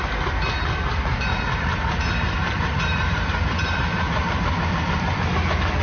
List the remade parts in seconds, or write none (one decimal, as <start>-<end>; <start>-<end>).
1.7-5.2